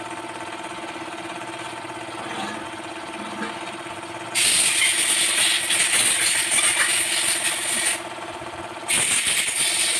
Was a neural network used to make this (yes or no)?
no